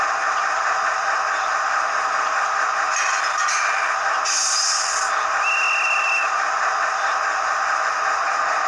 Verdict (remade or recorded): recorded